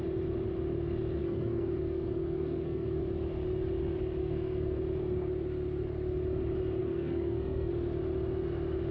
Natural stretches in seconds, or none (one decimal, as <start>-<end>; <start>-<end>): 0.0-1.2; 3.0-4.2; 4.8-6.8; 7.7-8.9